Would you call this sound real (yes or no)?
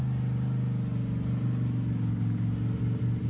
yes